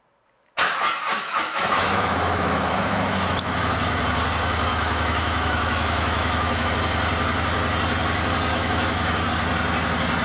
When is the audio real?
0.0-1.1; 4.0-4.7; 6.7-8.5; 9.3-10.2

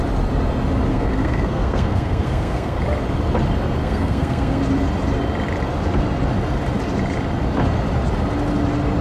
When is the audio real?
0.0-0.9; 2.8-3.8; 4.6-9.0